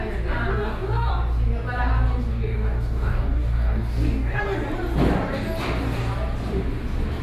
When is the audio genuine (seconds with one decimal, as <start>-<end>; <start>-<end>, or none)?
0.0-0.5; 1.1-2.3; 4.4-7.2